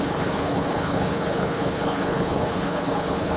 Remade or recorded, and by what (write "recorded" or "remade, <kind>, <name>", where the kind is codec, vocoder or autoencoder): remade, codec, HILCodec